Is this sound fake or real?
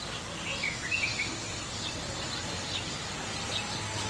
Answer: real